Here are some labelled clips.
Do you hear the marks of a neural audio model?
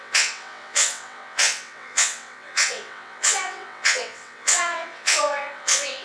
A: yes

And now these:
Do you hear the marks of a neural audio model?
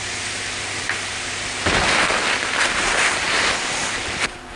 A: no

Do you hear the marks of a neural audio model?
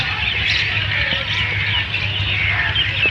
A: no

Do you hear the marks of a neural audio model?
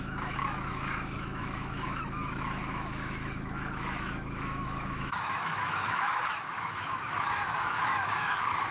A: yes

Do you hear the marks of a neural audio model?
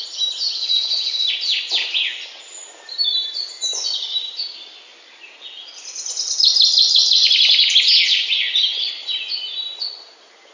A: no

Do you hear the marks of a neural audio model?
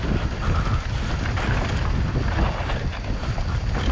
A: no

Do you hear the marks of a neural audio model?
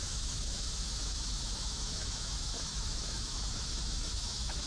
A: yes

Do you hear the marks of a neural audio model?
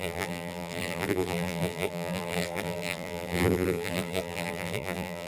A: yes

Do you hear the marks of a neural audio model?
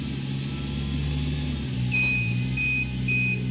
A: no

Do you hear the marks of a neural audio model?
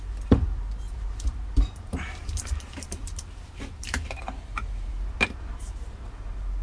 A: yes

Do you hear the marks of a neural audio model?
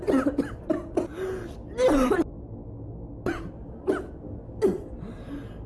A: no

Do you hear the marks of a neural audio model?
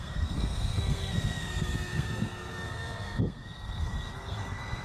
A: yes